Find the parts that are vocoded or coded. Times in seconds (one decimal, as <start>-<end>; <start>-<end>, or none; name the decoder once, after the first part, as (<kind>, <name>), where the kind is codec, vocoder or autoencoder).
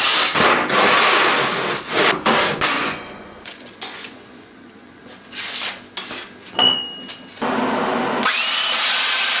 2.5-5.0 (vocoder, Vocos)